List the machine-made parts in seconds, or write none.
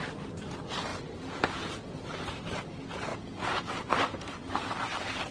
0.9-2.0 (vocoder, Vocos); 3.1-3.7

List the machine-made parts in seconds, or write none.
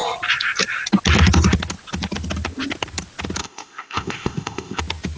3.4-4.8 (codec, ZipCodec)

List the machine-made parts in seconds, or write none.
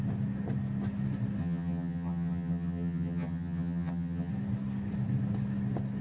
1.4-4.3 (vocoder, HiFi-GAN)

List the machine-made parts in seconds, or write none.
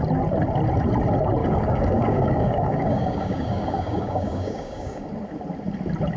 1.4-5.1 (codec, DAC)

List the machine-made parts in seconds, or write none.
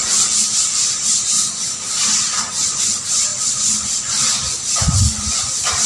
3.3-4.2 (vocoder, Vocos); 4.8-5.5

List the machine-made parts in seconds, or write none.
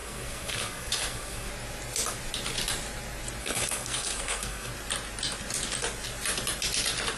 0.0-1.5 (codec, SNAC); 3.4-4.7